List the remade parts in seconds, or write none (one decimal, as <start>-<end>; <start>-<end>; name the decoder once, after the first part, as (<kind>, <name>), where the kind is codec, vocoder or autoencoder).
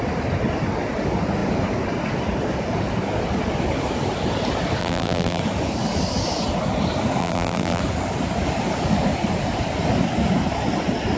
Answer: 4.8-5.4 (vocoder, BigVGAN v2); 7.2-7.8